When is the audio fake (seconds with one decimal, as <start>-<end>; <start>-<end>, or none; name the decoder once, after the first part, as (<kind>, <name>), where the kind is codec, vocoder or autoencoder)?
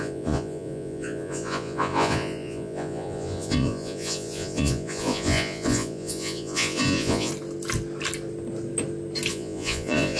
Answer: 0.0-7.3 (vocoder, Vocos); 9.3-10.2